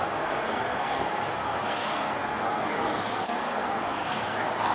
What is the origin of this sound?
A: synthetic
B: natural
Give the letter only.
A